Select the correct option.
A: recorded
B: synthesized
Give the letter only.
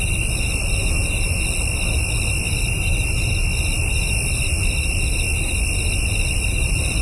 A